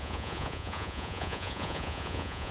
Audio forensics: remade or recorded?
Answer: remade